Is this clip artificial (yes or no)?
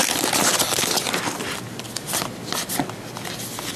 no